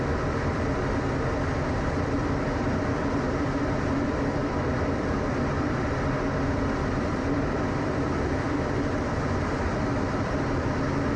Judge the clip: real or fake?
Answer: fake